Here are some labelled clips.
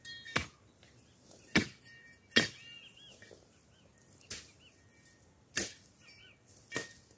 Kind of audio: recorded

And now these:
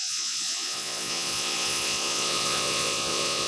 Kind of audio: remade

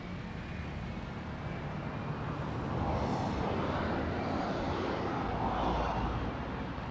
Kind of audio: recorded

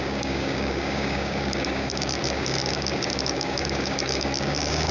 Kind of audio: remade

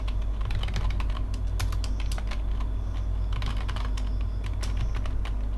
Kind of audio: recorded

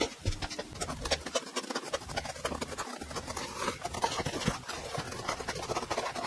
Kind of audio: recorded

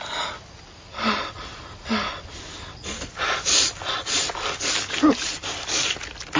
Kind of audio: recorded